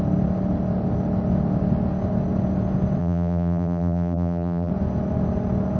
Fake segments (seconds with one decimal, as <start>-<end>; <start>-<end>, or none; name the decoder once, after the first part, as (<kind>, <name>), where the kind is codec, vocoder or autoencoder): 3.0-4.7 (vocoder, BigVGAN v2)